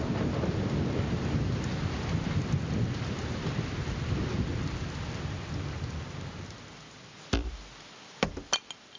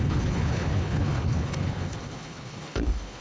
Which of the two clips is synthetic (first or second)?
second